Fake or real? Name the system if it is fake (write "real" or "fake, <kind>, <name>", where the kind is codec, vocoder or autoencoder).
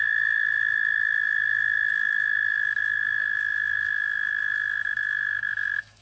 fake, autoencoder, DAC-VAE